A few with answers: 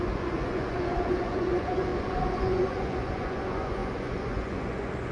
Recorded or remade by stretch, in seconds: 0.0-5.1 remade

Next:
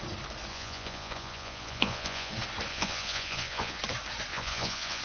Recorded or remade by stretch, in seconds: 0.0-0.5 recorded; 0.5-2.3 remade; 2.3-2.7 recorded; 2.7-3.8 remade; 3.8-4.3 recorded; 4.3-5.0 remade

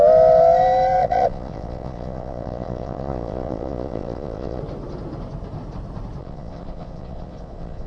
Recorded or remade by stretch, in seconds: 0.0-1.0 recorded; 1.0-4.6 remade; 4.6-6.2 recorded; 6.2-7.9 remade

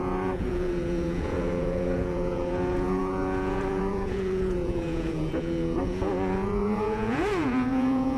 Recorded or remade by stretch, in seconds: 0.0-8.2 remade

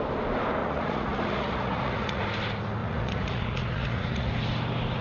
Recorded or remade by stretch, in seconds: 0.0-0.6 recorded; 0.6-2.2 remade; 2.2-2.8 recorded; 2.8-4.3 remade; 4.3-5.0 recorded